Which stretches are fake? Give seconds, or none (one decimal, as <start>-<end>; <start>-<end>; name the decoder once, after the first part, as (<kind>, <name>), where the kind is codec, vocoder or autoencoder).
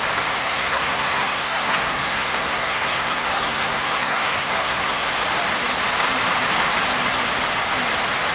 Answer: 0.4-5.1 (codec, SNAC)